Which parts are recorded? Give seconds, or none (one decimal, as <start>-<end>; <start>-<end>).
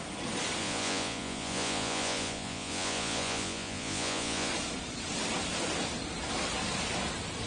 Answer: 0.0-0.6; 4.5-7.5